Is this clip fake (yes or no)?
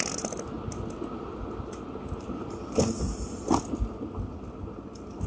no